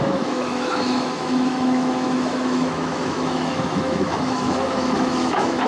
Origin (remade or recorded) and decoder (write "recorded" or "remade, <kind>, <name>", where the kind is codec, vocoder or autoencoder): remade, autoencoder, DAC-VAE